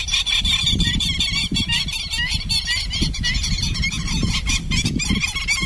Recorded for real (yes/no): yes